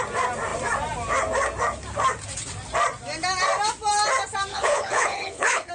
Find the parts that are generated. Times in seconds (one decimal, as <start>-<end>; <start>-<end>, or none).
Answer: 4.5-5.7